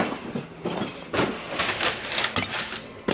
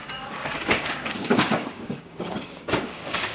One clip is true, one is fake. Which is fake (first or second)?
second